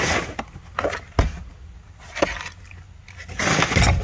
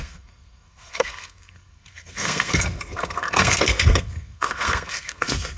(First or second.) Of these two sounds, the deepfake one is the second